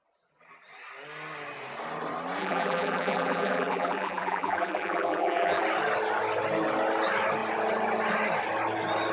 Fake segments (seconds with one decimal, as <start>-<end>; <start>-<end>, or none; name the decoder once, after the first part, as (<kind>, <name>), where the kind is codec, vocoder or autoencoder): 2.4-5.6 (vocoder, BigVGAN v2)